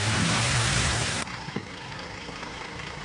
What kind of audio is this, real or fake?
fake